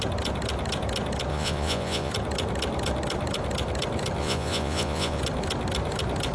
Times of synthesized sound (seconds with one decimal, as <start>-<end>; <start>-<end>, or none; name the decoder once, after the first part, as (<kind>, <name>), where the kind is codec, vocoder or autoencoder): 1.3-2.1 (vocoder, Vocos); 4.2-5.2